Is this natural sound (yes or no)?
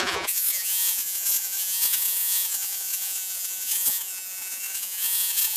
no